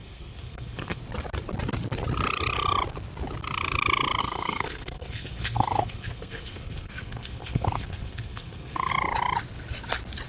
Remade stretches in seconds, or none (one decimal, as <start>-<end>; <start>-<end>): 0.0-1.0; 4.2-8.9